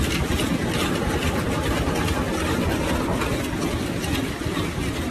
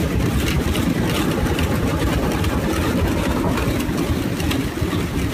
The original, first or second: first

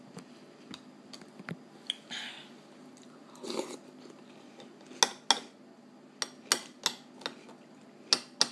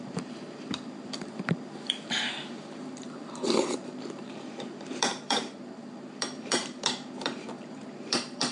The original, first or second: first